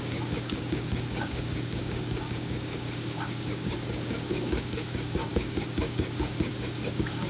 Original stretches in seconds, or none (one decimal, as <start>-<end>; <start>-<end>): none